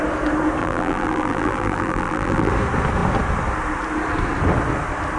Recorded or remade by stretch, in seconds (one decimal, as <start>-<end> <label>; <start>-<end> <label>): 0.0-0.6 recorded; 0.6-2.5 remade; 2.5-5.2 recorded